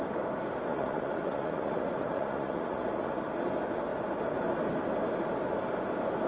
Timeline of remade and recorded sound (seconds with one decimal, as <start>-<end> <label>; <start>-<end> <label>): 0.0-0.7 recorded; 0.7-3.3 remade; 3.3-6.3 recorded